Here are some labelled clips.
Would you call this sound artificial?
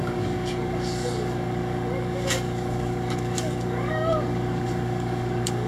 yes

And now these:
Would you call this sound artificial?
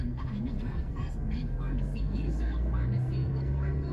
yes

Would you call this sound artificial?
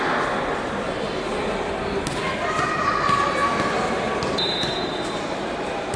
no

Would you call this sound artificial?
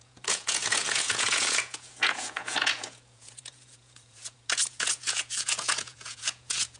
yes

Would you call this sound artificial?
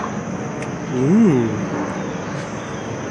no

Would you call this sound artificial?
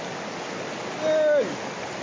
no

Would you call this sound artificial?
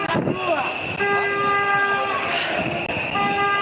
no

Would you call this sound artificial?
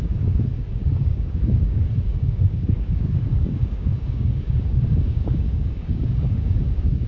yes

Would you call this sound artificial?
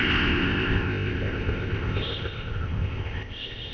yes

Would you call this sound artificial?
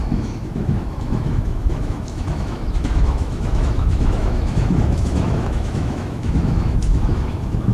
yes